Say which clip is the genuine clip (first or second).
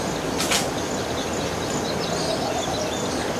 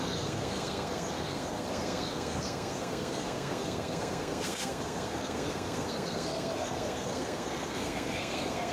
first